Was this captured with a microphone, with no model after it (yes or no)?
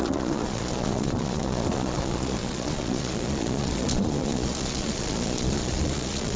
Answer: no